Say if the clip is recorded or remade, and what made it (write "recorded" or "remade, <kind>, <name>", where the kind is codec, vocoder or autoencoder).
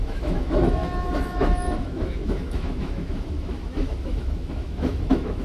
remade, autoencoder, DAC-VAE